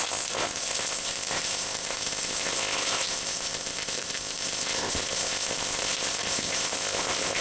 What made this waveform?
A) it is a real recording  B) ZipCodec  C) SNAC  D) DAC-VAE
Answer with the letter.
B